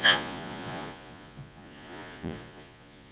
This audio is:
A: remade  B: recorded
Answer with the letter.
A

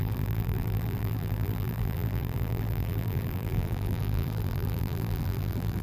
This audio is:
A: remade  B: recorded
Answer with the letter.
A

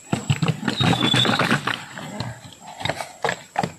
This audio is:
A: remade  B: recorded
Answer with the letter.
B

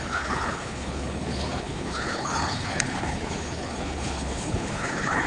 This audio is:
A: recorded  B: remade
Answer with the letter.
B